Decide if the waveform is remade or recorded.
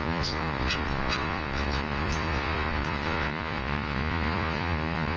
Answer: remade